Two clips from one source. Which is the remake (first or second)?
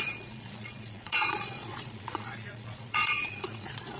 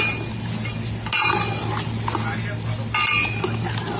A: first